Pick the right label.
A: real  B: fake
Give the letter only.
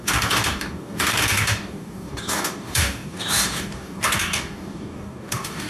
B